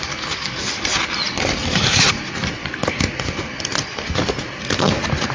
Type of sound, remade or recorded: recorded